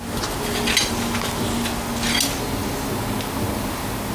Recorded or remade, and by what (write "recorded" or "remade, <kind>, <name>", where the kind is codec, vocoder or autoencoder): recorded